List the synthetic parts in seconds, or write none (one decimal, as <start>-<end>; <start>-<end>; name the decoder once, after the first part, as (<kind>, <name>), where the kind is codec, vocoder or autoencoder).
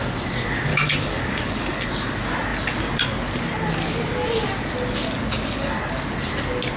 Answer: 0.7-2.1 (codec, DAC)